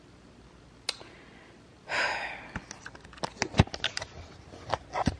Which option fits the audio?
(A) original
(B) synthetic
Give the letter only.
A